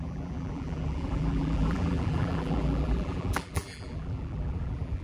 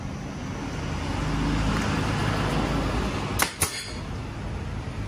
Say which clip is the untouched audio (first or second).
second